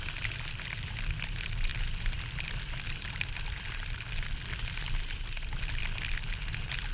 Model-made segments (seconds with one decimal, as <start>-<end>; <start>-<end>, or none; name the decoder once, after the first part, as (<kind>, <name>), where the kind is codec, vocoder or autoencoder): none